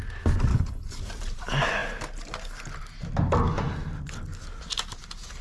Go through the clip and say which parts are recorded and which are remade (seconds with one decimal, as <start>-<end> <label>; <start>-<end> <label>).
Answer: 0.0-0.5 recorded; 0.5-1.0 remade; 1.0-5.4 recorded